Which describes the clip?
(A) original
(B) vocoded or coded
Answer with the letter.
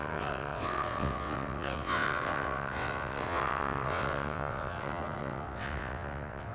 B